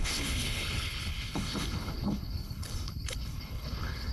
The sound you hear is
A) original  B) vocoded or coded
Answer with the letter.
B